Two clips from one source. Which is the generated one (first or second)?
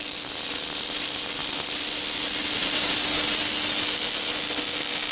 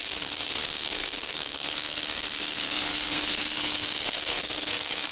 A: second